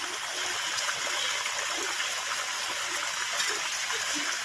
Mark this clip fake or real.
real